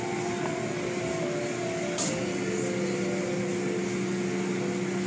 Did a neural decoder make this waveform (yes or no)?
no